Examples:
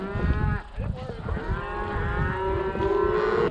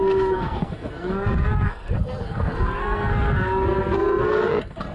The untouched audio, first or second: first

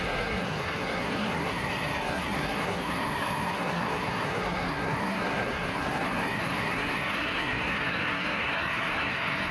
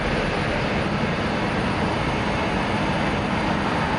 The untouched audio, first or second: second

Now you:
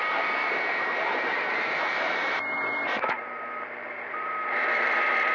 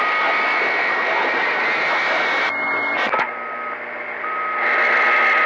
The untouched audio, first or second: second